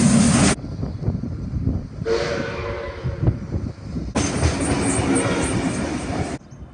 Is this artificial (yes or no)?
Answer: no